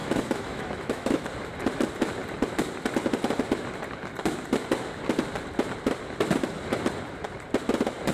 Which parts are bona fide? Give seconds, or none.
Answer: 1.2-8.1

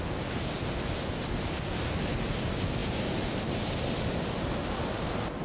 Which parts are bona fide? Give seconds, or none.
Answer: 0.0-5.4

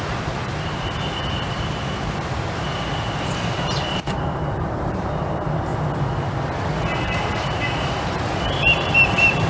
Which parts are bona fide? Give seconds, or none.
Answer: 5.7-7.0